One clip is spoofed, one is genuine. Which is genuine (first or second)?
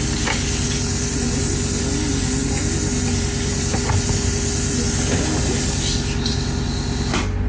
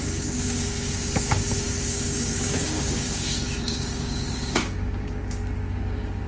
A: first